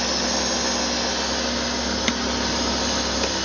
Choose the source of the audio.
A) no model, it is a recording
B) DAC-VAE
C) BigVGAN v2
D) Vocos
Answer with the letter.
A